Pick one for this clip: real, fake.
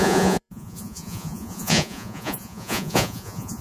fake